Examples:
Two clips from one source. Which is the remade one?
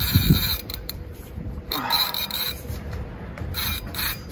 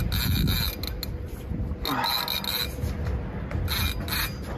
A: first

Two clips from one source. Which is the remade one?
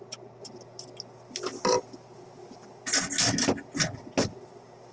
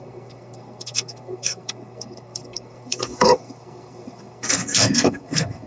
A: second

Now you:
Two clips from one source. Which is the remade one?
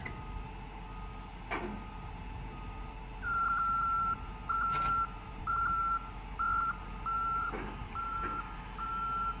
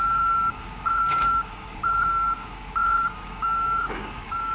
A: second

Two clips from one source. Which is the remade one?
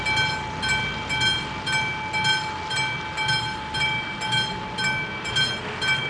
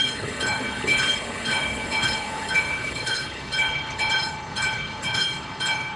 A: second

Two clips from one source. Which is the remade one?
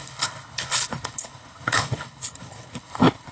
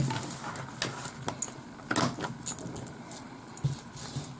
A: first